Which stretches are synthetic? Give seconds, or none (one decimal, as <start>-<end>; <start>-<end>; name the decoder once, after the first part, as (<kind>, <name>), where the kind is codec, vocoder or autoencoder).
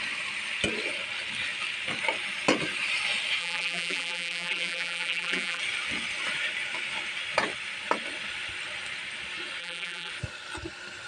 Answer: 3.4-5.6 (vocoder, BigVGAN v2); 9.6-10.1